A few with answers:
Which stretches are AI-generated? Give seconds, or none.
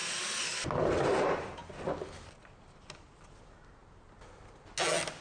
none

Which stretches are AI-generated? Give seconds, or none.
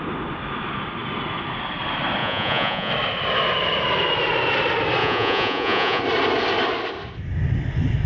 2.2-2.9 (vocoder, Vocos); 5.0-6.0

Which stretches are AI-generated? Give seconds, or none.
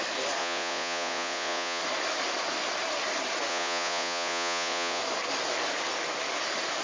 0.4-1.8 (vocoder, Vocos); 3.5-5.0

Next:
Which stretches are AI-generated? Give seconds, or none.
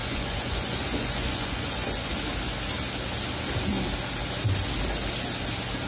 0.0-2.1 (vocoder, Vocos)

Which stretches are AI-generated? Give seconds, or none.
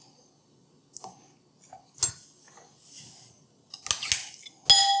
none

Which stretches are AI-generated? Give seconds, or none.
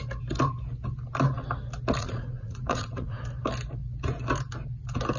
2.0-3.2 (vocoder, Vocos)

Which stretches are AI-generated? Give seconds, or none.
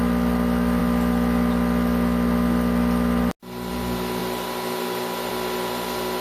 none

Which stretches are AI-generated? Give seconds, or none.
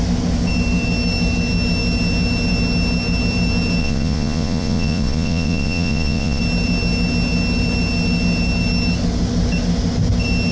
3.8-6.4 (vocoder, Vocos)